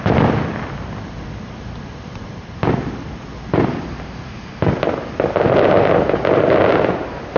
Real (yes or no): yes